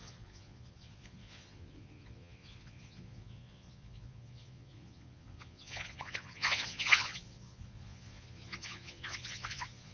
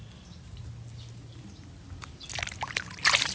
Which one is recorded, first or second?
second